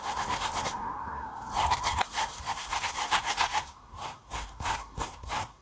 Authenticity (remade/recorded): remade